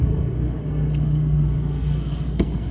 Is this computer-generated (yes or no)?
yes